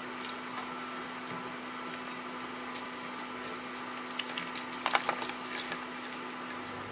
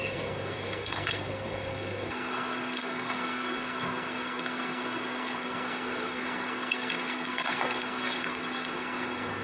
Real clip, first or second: first